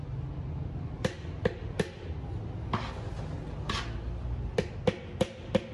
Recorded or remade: recorded